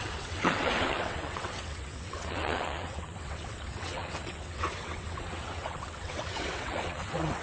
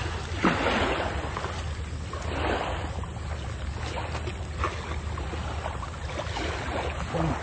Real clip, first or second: second